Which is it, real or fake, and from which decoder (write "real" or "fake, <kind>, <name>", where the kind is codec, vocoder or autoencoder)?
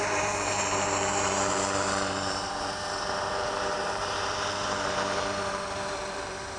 fake, vocoder, BigVGAN v2